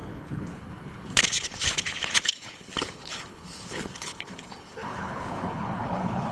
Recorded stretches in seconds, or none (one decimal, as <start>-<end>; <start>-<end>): none